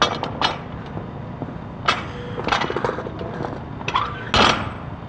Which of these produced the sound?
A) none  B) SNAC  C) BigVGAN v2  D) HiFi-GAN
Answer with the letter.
A